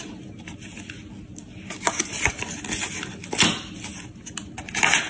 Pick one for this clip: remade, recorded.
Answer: recorded